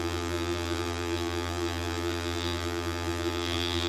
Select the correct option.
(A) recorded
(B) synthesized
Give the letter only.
B